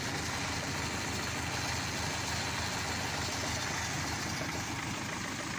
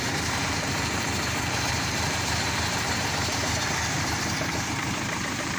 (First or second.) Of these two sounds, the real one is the first